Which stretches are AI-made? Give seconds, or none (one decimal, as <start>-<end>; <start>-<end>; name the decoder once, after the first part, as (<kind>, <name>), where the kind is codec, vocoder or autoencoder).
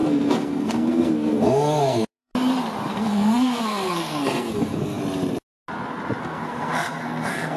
0.0-2.3 (codec, SNAC); 2.9-5.0; 6.2-7.6